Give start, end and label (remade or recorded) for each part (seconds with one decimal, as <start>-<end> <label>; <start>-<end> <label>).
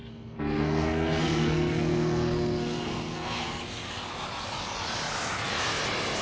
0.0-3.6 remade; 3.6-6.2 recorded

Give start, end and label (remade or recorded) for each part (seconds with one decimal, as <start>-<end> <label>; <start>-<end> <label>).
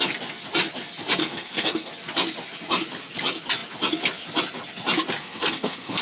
0.0-1.2 recorded; 1.2-1.9 remade; 1.9-5.2 recorded; 5.2-6.0 remade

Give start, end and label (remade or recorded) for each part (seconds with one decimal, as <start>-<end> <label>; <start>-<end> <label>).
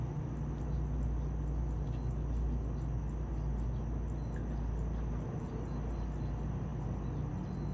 0.0-7.7 recorded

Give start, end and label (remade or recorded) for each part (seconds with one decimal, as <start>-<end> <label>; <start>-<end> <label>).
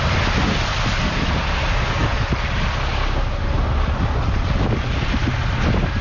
0.0-6.0 recorded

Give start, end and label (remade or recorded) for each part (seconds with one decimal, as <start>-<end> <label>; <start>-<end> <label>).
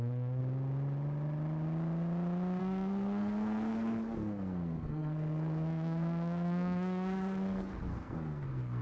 0.0-0.4 remade; 0.4-2.6 recorded; 2.6-8.8 remade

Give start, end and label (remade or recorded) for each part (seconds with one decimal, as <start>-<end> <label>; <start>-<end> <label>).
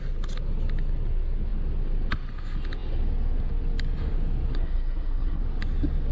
0.0-4.5 recorded; 4.5-5.4 remade; 5.4-6.1 recorded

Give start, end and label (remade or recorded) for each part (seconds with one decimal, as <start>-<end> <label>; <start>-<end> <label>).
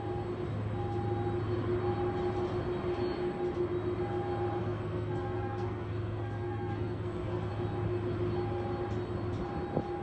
0.0-4.6 recorded; 4.6-7.5 remade; 7.5-10.0 recorded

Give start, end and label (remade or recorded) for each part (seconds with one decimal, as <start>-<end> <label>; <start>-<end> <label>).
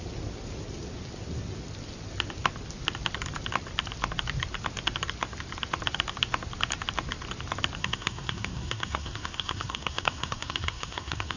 0.0-7.8 recorded; 7.8-11.4 remade